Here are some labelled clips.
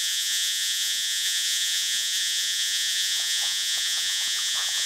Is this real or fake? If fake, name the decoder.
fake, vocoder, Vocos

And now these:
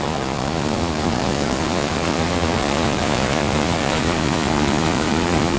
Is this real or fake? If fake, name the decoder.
fake, vocoder, Vocos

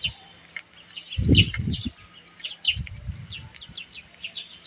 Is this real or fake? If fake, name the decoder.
real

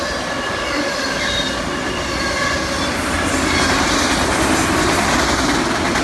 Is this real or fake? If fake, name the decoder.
real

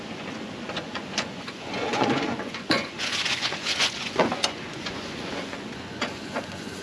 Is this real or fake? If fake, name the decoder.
fake, vocoder, Vocos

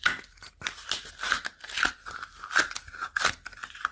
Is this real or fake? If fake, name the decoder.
real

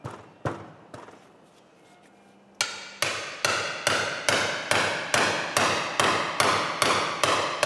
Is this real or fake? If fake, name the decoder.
real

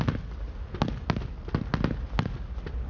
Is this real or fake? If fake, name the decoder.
real